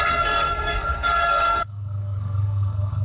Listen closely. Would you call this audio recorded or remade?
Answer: remade